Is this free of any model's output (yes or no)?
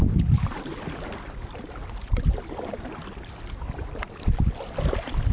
yes